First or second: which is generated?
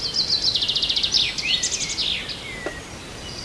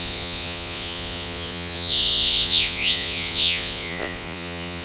second